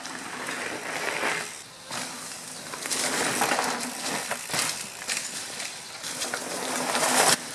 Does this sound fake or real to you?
real